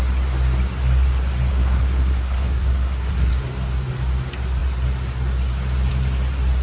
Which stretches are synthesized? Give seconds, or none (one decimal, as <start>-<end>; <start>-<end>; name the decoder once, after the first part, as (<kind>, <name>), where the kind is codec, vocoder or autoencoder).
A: 1.5-3.3 (codec, SNAC)